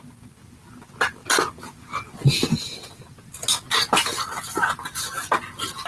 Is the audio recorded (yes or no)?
yes